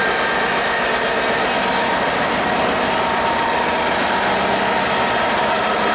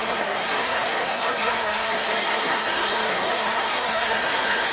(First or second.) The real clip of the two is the first